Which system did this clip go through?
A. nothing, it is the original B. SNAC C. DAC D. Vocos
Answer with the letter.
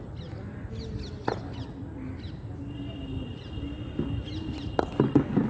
A